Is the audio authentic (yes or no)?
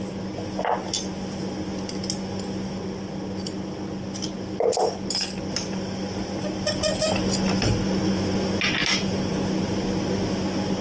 yes